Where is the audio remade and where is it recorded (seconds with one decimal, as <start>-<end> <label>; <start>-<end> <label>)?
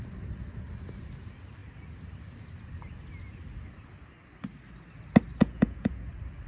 0.0-5.4 recorded; 5.4-6.1 remade; 6.1-6.5 recorded